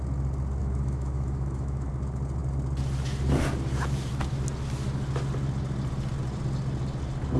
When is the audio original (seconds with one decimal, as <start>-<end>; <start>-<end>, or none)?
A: 0.0-0.6; 1.9-7.4